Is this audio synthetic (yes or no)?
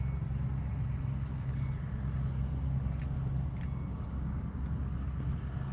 no